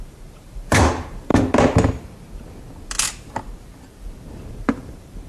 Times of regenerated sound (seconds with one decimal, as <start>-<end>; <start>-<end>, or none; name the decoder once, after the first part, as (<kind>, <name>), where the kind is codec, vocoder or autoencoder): 0.0-1.3 (vocoder, BigVGAN v2); 4.5-5.3